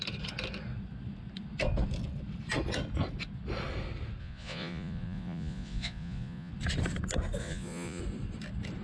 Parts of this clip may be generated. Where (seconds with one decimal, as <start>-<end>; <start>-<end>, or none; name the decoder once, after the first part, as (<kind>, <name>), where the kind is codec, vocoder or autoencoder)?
4.2-6.5 (vocoder, Vocos); 7.4-8.0